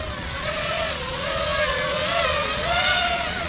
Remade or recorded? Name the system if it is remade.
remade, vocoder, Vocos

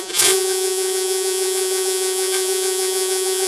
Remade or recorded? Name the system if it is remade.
remade, vocoder, Vocos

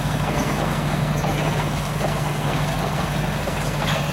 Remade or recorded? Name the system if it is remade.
remade, codec, SNAC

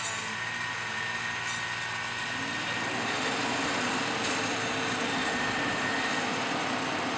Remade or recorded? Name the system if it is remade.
recorded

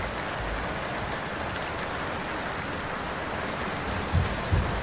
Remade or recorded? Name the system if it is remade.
recorded